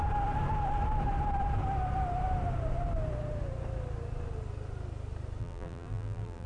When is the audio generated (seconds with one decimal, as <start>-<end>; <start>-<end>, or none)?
5.4-6.5